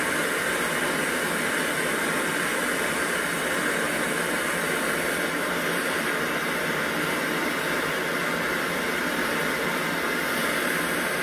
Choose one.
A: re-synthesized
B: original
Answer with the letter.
B